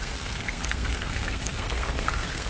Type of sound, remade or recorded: remade